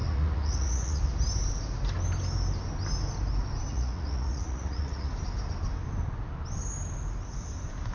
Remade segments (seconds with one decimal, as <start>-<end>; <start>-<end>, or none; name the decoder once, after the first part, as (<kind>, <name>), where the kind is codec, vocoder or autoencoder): 0.0-1.0 (vocoder, Vocos); 3.7-5.1